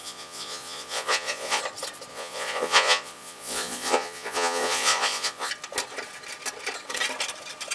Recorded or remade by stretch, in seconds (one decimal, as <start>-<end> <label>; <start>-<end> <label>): 0.0-1.6 remade; 1.6-2.1 recorded; 2.1-5.5 remade; 5.5-7.7 recorded